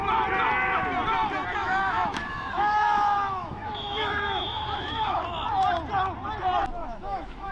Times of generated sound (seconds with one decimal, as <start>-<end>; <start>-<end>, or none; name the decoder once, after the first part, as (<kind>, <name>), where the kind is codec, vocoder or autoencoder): 1.6-5.2 (autoencoder, DAC-VAE); 6.8-7.5